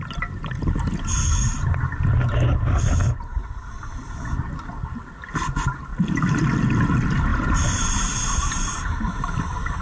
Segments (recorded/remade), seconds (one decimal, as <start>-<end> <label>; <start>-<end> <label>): 0.0-5.9 recorded; 5.9-6.5 remade; 6.5-7.3 recorded; 7.3-9.0 remade; 9.0-9.8 recorded